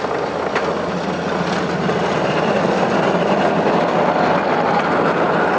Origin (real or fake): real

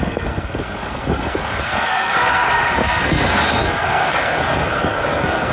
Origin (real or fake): fake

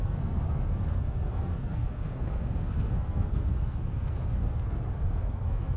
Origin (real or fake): fake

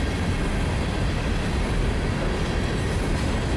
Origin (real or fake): real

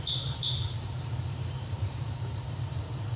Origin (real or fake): fake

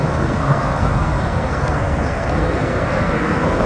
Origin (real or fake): fake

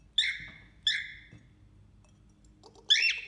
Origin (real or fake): real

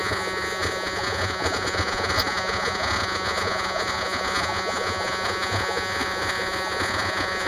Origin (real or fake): fake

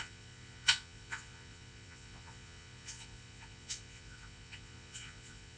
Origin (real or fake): fake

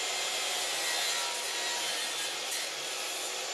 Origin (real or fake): real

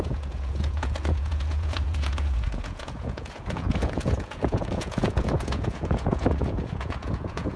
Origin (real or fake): fake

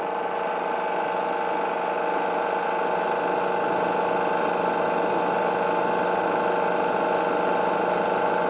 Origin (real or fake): real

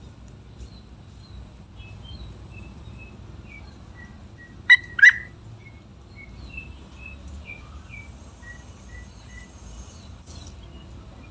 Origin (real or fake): real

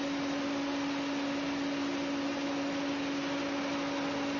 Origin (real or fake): real